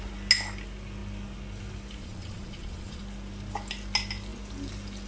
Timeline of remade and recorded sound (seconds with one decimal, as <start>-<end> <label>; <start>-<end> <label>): 0.0-2.0 recorded; 2.0-3.0 remade; 3.0-5.1 recorded